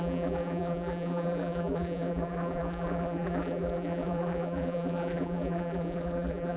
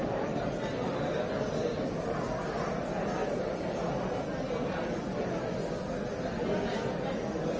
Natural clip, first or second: second